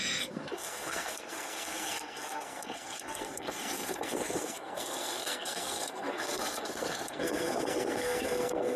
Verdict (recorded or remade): remade